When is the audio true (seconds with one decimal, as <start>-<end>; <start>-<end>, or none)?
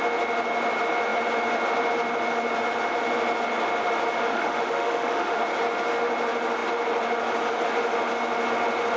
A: 0.0-4.3; 5.4-9.0